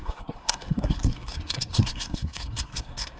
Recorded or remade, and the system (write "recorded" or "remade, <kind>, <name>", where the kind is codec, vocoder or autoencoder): remade, codec, SNAC